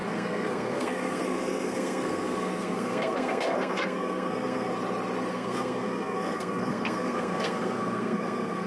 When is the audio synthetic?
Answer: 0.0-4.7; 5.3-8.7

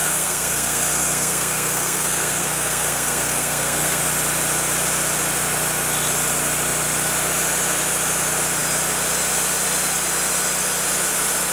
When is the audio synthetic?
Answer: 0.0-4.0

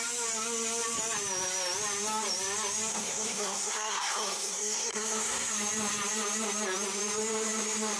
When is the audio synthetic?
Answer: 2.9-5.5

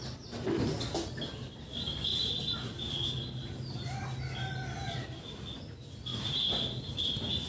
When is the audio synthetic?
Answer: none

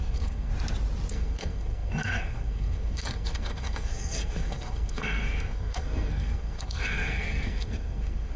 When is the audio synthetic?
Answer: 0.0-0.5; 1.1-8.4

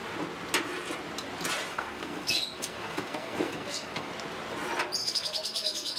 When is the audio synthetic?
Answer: 1.7-4.1; 5.0-6.0

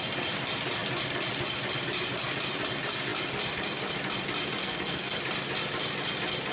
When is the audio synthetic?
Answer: 4.6-5.1